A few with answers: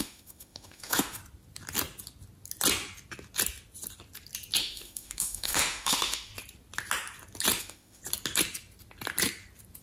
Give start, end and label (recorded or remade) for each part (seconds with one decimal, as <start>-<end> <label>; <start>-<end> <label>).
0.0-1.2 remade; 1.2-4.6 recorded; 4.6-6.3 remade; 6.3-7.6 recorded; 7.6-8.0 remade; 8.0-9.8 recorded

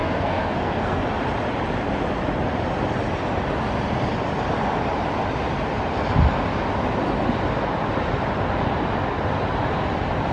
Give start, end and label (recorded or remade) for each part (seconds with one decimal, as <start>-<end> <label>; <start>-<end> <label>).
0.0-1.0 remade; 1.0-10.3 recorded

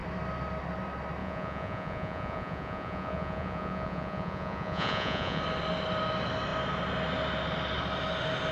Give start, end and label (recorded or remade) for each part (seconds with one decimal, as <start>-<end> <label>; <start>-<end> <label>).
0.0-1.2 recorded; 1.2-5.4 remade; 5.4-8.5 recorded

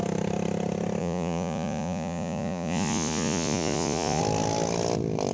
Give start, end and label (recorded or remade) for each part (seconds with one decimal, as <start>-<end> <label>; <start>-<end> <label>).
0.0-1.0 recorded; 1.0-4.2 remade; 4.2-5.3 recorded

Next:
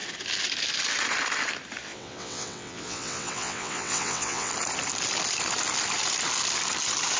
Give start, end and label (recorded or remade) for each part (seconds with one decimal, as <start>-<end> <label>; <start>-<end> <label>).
0.0-1.8 recorded; 1.8-4.5 remade; 4.5-7.2 recorded

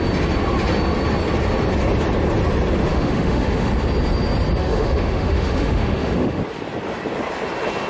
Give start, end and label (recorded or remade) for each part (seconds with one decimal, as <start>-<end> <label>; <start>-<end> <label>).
0.0-2.9 recorded; 2.9-3.7 remade; 3.7-4.6 recorded; 4.6-6.4 remade; 6.4-7.9 recorded